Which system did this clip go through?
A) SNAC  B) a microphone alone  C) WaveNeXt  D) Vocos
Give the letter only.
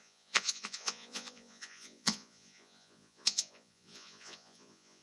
D